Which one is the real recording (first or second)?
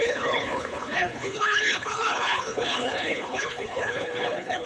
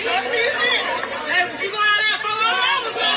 second